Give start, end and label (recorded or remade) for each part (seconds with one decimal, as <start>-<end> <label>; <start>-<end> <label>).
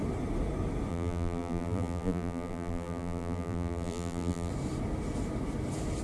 0.0-0.9 recorded; 0.9-4.5 remade; 4.5-6.0 recorded